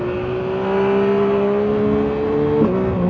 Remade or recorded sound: recorded